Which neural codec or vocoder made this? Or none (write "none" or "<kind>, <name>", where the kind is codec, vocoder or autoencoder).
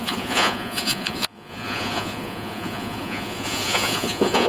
vocoder, Vocos